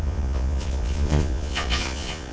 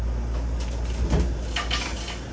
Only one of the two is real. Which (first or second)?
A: second